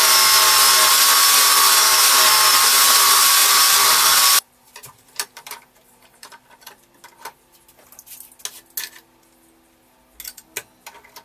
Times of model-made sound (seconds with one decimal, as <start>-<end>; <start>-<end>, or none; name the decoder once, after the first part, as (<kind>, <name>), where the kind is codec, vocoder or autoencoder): 3.4-6.8 (vocoder, BigVGAN v2)